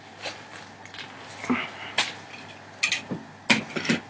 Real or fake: real